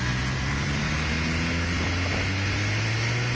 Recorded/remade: recorded